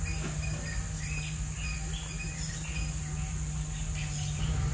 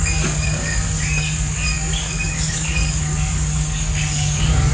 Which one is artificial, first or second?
second